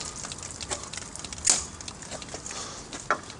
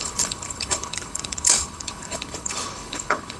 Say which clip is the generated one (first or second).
second